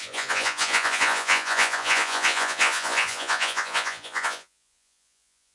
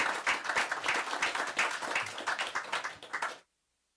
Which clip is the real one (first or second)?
second